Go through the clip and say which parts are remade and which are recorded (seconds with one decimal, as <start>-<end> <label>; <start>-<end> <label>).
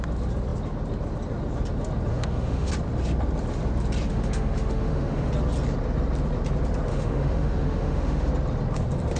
0.0-2.1 recorded; 2.1-2.7 remade; 2.7-4.1 recorded; 4.1-5.3 remade; 5.3-6.9 recorded; 6.9-8.3 remade; 8.3-9.2 recorded